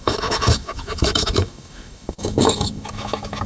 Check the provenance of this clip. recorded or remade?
remade